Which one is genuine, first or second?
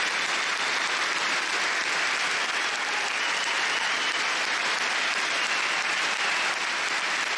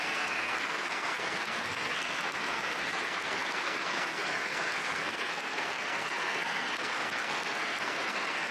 first